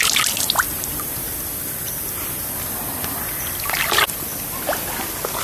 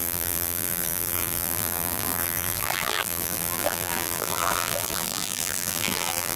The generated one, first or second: second